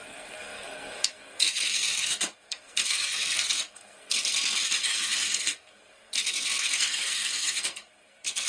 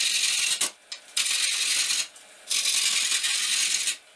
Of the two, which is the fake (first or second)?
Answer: first